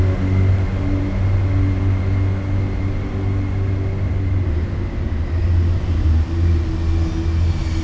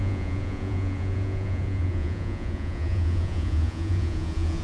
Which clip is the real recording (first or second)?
first